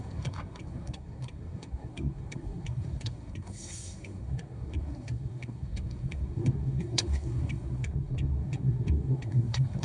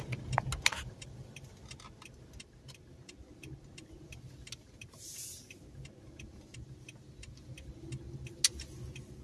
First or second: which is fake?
first